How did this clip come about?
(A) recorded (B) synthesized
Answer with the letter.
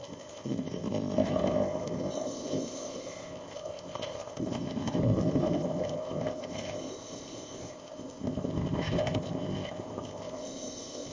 B